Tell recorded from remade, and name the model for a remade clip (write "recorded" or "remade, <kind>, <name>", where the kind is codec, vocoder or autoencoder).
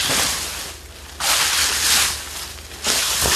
recorded